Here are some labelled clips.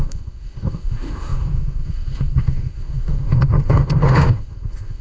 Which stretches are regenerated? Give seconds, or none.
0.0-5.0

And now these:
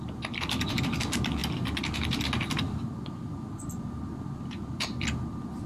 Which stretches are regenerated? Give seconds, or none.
none

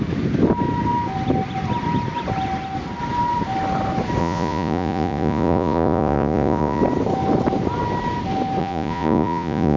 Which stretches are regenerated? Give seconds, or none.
4.2-6.8; 8.6-9.8

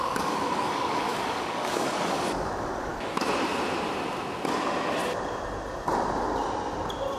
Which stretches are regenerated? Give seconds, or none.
0.0-2.9

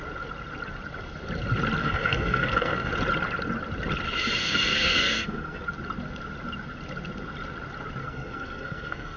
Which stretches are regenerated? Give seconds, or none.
1.8-2.9; 4.4-5.6; 8.0-9.2

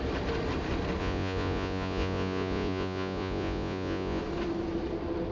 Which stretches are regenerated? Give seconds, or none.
1.0-4.2